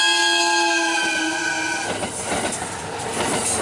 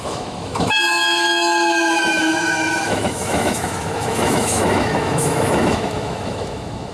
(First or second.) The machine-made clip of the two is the second